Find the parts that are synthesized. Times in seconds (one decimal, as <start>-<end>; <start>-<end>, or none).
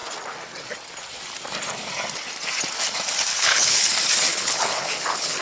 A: 3.3-3.8; 4.3-5.4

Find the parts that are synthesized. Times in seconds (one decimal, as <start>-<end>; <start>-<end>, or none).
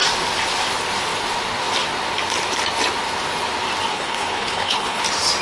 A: 3.9-5.0